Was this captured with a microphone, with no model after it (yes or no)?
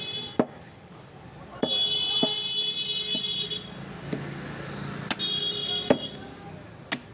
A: yes